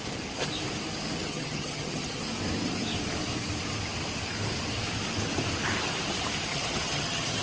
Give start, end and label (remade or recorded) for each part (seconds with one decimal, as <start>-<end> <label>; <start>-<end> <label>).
0.0-1.3 recorded; 1.3-2.2 remade; 2.2-6.5 recorded; 6.5-7.4 remade